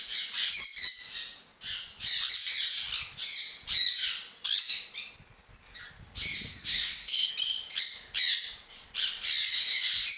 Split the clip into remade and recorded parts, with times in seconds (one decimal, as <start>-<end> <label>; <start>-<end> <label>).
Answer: 0.0-6.5 recorded; 6.5-7.3 remade; 7.3-10.2 recorded

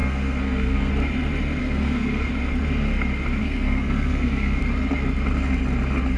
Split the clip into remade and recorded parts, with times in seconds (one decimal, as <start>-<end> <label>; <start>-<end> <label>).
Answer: 0.0-0.9 remade; 0.9-1.6 recorded; 1.6-2.3 remade; 2.3-3.4 recorded; 3.4-4.6 remade; 4.6-6.2 recorded

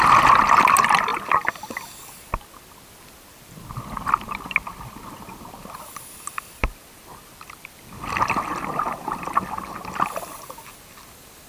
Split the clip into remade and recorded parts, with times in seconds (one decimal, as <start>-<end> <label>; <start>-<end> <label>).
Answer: 0.0-6.6 recorded; 6.6-9.7 remade; 9.7-11.5 recorded